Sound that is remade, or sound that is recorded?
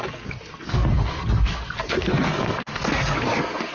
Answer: remade